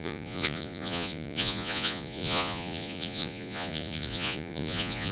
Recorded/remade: remade